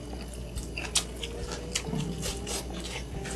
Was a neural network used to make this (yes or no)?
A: no